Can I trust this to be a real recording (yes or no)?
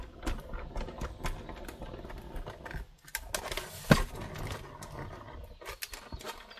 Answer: yes